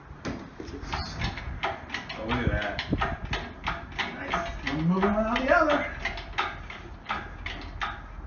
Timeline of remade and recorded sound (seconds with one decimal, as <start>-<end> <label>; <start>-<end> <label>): 0.0-8.3 recorded